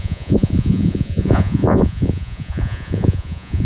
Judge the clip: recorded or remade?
remade